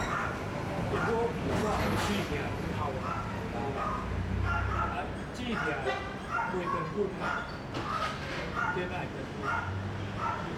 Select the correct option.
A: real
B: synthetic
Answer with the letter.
A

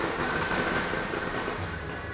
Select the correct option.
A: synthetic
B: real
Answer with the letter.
A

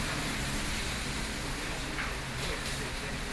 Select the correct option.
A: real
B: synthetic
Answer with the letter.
A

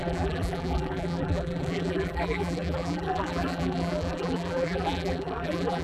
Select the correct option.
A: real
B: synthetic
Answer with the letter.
B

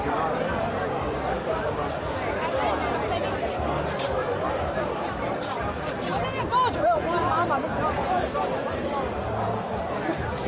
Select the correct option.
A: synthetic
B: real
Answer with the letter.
A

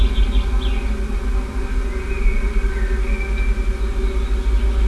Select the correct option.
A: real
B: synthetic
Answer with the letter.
A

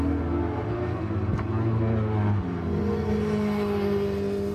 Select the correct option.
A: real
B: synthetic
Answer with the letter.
A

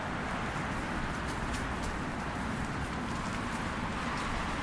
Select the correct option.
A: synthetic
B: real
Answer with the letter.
B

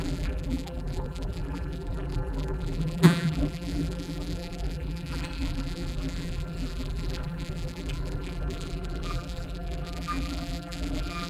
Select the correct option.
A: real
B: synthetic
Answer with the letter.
B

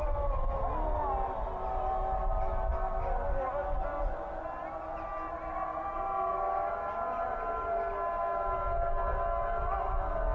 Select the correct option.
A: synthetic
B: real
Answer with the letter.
B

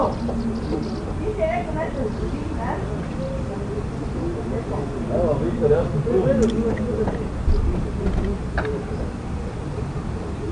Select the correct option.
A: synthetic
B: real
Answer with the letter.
B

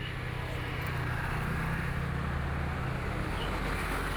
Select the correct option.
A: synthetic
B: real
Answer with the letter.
B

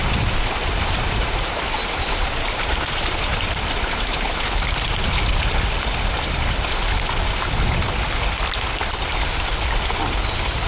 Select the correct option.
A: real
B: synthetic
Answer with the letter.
B